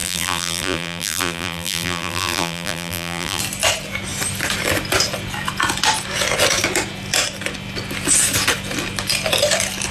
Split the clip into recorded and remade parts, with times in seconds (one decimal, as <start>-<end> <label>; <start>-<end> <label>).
0.0-3.4 remade; 3.4-9.9 recorded